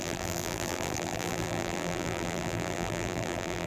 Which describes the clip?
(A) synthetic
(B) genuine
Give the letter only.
A